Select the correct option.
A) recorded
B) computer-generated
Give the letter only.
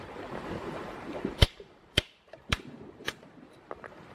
B